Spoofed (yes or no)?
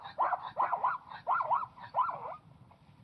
yes